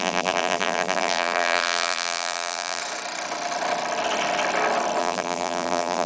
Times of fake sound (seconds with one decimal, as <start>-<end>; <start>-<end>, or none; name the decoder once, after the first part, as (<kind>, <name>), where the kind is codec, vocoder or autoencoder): 0.0-2.8 (vocoder, BigVGAN v2); 5.0-6.1